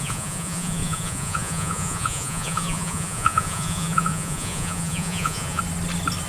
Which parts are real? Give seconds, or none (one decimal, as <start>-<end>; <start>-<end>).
5.6-6.3